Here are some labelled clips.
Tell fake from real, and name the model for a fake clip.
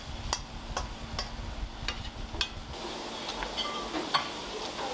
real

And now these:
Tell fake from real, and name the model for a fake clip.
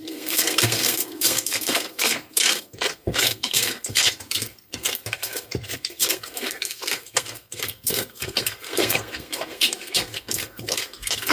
fake, codec, SNAC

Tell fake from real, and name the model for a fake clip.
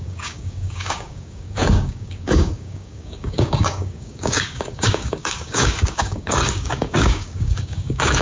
fake, codec, DAC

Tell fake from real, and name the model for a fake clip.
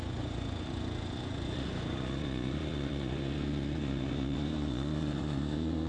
fake, vocoder, Vocos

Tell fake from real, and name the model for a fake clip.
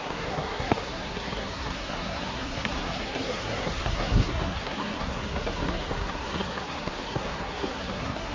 fake, codec, SNAC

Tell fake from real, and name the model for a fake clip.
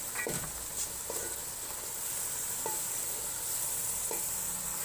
real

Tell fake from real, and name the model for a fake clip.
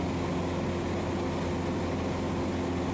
real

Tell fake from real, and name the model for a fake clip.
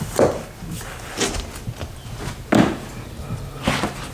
real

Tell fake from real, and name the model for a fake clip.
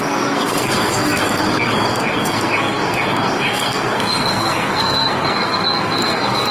fake, codec, SNAC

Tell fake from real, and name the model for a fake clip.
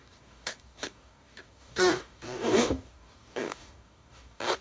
fake, codec, DAC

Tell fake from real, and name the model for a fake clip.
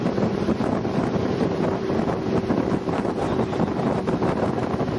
real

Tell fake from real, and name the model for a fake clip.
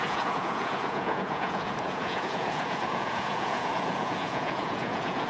fake, vocoder, Vocos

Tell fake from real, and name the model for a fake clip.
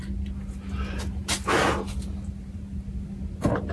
real